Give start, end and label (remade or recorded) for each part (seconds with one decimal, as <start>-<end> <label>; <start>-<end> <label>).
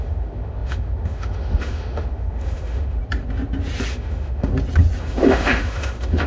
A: 0.0-3.0 remade; 3.0-3.9 recorded; 3.9-4.5 remade; 4.5-5.0 recorded; 5.0-6.3 remade